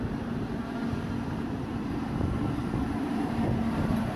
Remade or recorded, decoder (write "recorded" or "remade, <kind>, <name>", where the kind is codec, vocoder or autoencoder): remade, vocoder, BigVGAN v2